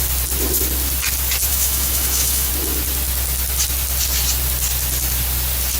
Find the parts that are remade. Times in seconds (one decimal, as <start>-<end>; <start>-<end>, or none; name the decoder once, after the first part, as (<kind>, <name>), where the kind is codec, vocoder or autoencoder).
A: 1.5-2.5 (autoencoder, DAC-VAE)